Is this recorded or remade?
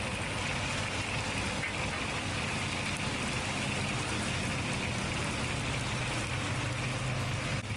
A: recorded